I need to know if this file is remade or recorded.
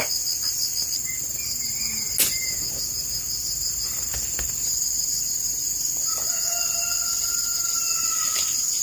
recorded